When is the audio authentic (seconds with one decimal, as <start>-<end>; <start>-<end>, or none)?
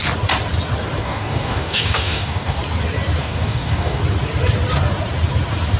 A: 0.0-1.0; 2.6-3.2; 4.0-5.8